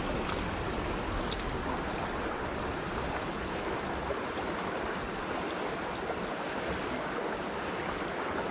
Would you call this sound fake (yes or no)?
no